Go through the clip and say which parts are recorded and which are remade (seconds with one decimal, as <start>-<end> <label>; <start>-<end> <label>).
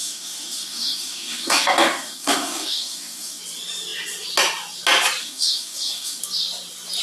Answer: 0.0-3.4 remade; 3.4-5.2 recorded; 5.2-6.2 remade; 6.2-7.0 recorded